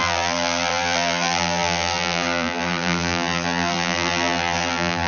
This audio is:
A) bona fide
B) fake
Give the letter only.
B